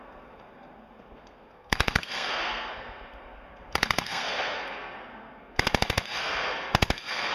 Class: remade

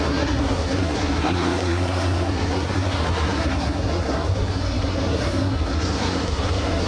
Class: remade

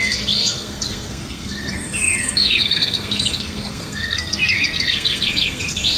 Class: remade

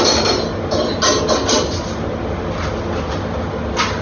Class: recorded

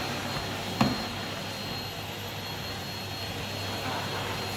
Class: recorded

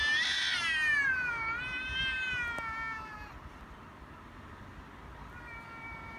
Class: recorded